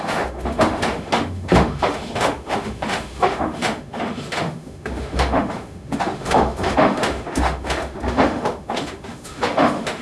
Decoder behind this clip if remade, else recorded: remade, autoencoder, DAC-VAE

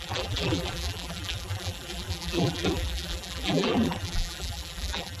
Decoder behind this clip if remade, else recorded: remade, vocoder, BigVGAN v2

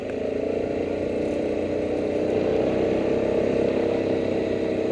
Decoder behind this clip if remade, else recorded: recorded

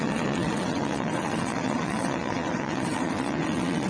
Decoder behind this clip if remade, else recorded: remade, vocoder, WaveNeXt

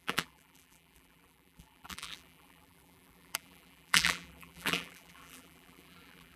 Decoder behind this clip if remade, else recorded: remade, vocoder, BigVGAN v2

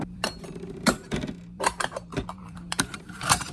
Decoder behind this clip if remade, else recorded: remade, vocoder, BigVGAN v2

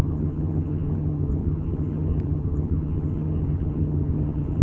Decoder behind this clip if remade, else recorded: remade, vocoder, HiFi-GAN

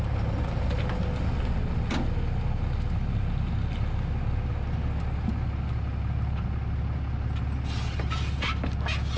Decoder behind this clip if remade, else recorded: recorded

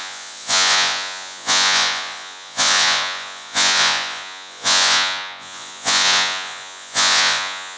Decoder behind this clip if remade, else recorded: remade, vocoder, Vocos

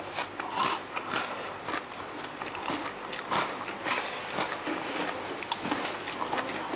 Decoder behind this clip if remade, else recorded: recorded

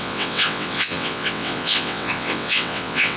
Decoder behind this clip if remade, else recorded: remade, vocoder, WaveNeXt